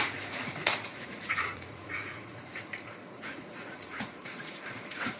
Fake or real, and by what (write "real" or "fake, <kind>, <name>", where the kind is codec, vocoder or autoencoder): fake, vocoder, Vocos